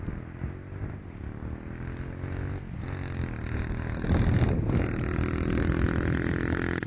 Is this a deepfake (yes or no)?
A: no